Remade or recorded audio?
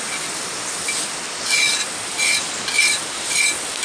recorded